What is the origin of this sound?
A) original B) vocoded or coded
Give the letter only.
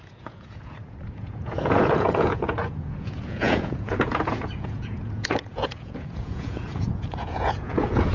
B